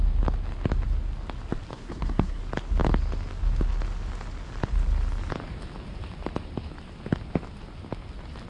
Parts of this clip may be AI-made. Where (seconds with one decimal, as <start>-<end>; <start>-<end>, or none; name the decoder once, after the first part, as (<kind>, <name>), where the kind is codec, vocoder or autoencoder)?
1.7-2.4 (codec, SNAC)